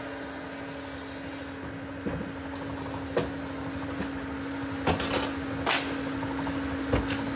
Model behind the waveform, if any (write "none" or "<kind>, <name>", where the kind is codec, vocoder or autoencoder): none